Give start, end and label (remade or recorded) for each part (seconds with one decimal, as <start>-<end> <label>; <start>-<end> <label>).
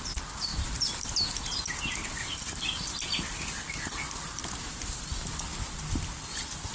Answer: 0.0-6.7 recorded